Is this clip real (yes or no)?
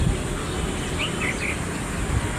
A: yes